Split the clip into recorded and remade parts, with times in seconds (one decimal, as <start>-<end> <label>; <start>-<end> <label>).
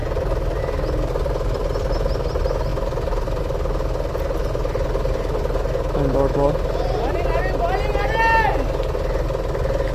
0.0-0.6 remade; 0.6-2.7 recorded; 2.7-3.4 remade; 3.4-9.9 recorded